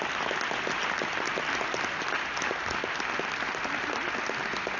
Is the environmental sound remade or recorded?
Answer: recorded